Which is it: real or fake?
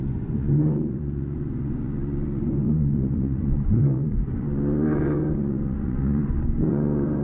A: fake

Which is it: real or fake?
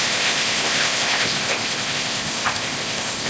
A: fake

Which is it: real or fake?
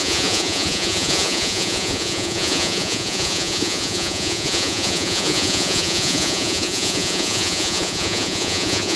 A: fake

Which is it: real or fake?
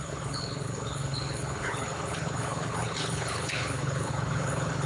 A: fake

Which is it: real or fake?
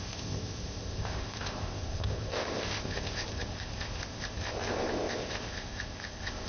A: fake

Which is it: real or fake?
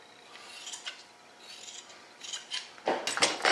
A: real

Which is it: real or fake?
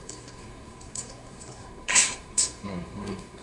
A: fake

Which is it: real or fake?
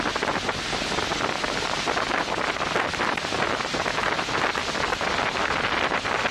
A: real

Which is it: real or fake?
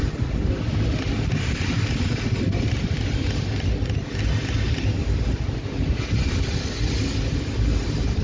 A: real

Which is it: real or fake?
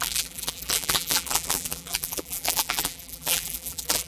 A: fake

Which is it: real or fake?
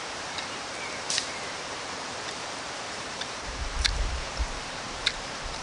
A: fake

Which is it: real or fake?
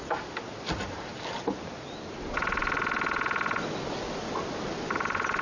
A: real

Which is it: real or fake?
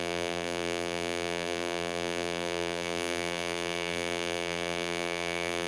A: fake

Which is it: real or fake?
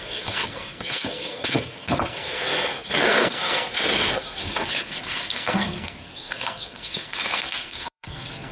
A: fake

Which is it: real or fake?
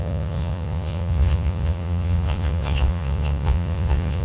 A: fake